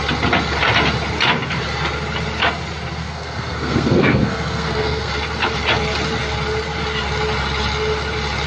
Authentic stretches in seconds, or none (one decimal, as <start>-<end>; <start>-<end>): 0.0-3.0; 5.1-8.5

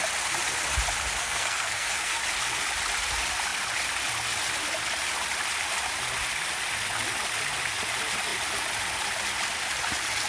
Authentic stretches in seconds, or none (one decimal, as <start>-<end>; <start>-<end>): 0.0-1.2; 2.2-10.3

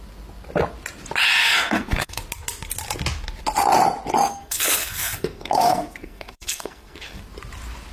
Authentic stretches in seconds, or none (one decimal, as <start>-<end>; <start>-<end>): 0.0-1.4; 2.2-4.3; 7.2-7.9

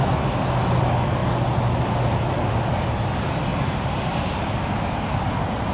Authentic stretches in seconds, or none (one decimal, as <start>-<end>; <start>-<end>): 0.0-5.7

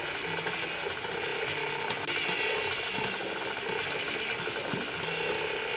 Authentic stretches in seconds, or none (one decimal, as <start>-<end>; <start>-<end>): 0.0-5.8

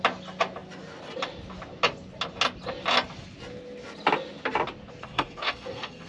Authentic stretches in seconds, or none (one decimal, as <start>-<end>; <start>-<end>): 0.0-5.0

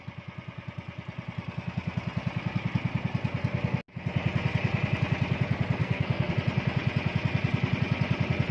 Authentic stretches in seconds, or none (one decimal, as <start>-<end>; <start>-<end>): 0.0-5.8; 6.3-8.5

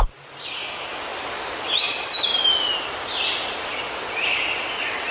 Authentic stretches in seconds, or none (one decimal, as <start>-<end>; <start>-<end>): 0.0-5.1